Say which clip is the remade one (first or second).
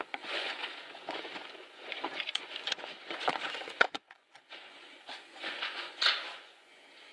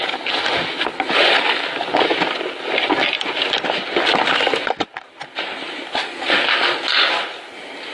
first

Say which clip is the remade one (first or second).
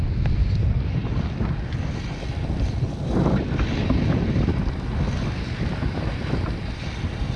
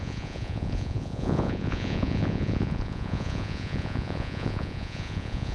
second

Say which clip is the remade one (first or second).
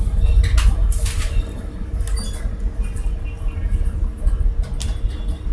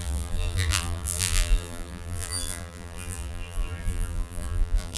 second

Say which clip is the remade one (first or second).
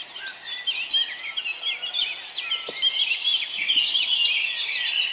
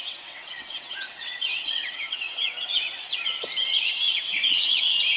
second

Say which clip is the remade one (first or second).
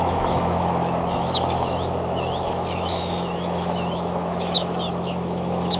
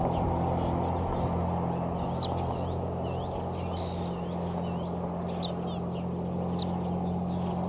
first